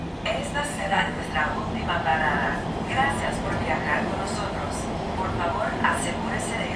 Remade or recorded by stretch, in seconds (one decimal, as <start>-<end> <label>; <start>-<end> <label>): 0.0-0.7 recorded; 0.7-1.2 remade; 1.2-6.8 recorded